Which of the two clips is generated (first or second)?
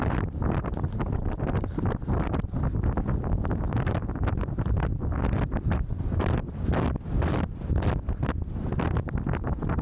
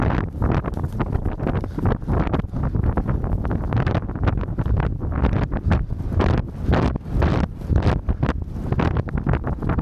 first